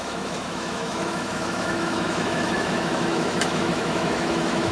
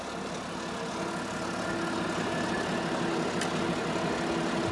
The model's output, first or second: first